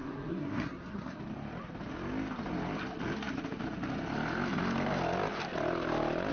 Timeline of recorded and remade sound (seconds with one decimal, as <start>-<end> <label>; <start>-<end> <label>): 0.0-1.2 remade; 1.2-6.3 recorded